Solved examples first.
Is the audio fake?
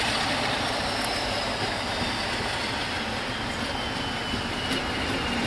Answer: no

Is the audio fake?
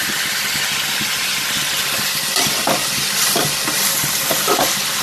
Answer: no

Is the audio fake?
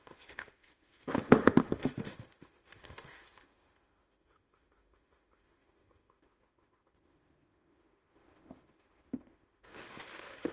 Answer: yes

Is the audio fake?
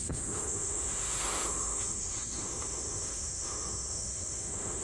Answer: yes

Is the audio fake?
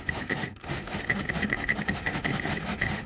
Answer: yes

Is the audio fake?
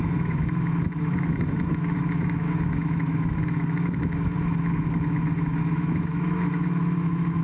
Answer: yes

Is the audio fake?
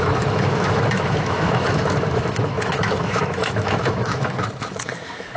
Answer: yes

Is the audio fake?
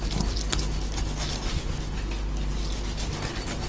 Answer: no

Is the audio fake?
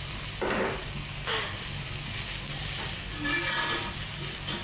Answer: no